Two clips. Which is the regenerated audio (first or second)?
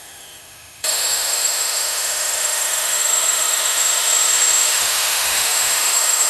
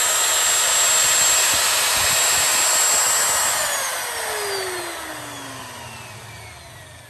first